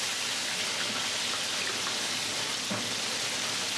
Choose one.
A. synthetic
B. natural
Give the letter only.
B